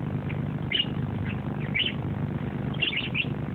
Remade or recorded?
recorded